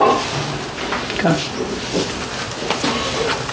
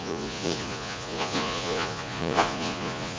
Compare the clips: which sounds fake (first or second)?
second